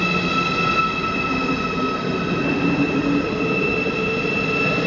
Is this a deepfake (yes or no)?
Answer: no